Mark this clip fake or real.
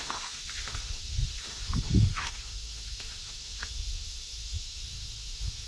fake